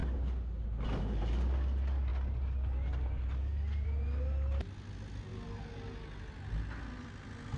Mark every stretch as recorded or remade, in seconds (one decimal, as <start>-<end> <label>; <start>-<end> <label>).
0.0-7.6 recorded